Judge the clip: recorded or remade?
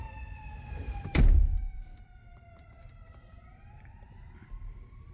remade